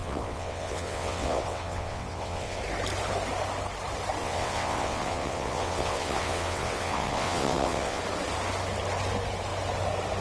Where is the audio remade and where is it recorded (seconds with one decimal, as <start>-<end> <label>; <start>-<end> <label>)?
0.0-2.6 remade; 2.6-4.2 recorded; 4.2-8.0 remade; 8.0-10.2 recorded